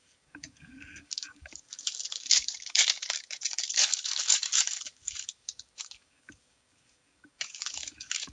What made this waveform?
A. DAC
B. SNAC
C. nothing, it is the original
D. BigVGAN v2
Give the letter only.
A